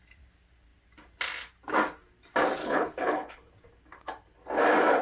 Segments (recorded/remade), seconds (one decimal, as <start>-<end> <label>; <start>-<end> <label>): 0.0-2.6 recorded; 2.6-3.5 remade; 3.5-5.0 recorded